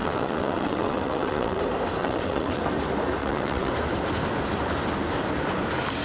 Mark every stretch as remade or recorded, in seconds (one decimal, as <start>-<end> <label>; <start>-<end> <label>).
0.0-1.6 remade; 1.6-2.0 recorded; 2.0-2.6 remade; 2.6-3.2 recorded; 3.2-3.7 remade; 3.7-6.0 recorded

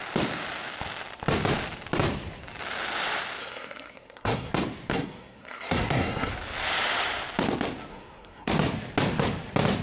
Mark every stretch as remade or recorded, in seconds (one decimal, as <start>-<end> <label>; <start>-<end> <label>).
0.0-3.4 recorded; 3.4-4.5 remade; 4.5-4.9 recorded; 4.9-6.3 remade; 6.3-7.9 recorded; 7.9-8.5 remade; 8.5-9.8 recorded

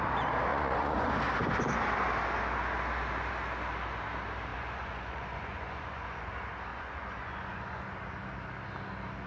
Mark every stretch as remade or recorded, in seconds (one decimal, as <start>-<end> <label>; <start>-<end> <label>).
0.0-0.5 recorded; 0.5-1.1 remade; 1.1-4.5 recorded; 4.5-6.3 remade; 6.3-6.7 recorded; 6.7-7.8 remade; 7.8-9.3 recorded